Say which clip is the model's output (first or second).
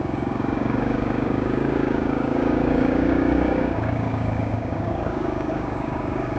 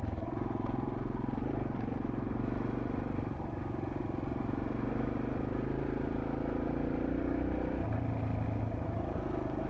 first